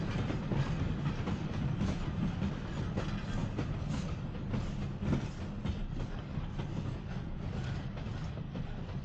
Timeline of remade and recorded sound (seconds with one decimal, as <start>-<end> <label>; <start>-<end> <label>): 0.0-9.0 recorded